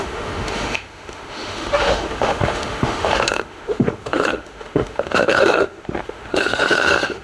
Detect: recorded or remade remade